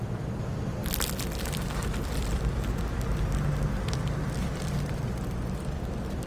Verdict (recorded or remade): remade